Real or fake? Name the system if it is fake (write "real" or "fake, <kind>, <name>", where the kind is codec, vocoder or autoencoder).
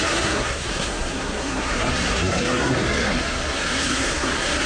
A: fake, codec, SNAC